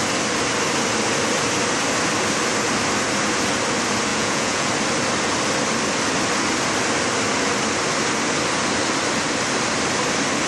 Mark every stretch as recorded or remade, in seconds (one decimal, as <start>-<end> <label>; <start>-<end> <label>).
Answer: 0.0-4.1 recorded; 4.1-4.7 remade; 4.7-10.5 recorded